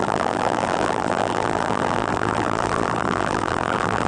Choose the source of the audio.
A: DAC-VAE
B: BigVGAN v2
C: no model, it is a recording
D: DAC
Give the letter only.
B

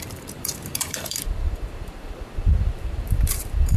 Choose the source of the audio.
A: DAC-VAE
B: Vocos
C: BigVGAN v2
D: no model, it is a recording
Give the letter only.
C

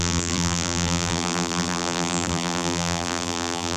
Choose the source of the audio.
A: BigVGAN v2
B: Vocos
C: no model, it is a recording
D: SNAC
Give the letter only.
A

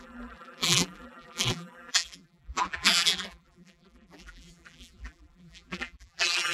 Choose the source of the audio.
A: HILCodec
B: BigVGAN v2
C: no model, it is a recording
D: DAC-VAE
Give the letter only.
B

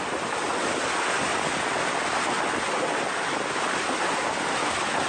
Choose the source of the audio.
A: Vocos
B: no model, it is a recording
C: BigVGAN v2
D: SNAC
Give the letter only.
B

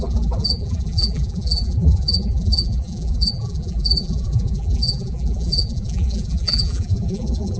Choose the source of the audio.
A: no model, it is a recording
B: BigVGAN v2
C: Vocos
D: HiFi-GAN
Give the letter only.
B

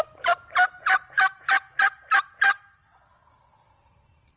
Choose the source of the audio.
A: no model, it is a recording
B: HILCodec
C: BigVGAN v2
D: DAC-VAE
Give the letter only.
C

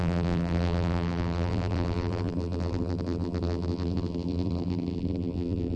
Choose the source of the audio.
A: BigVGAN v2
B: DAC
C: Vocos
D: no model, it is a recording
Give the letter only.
A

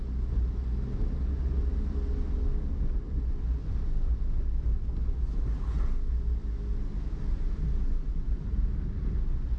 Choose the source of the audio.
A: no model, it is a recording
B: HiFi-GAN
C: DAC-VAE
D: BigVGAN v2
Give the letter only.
A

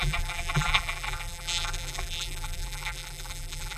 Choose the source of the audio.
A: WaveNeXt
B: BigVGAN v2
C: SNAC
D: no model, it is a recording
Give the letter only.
B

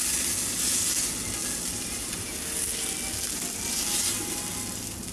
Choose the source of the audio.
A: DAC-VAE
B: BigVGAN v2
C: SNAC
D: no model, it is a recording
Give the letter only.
D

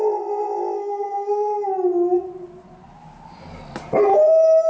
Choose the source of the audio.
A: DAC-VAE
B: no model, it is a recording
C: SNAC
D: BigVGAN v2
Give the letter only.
B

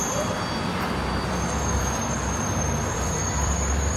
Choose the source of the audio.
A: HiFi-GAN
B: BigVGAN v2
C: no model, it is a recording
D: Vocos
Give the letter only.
B